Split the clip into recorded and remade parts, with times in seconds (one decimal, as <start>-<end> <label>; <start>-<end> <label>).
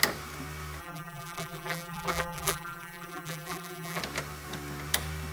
0.0-0.8 recorded; 0.8-4.0 remade; 4.0-5.3 recorded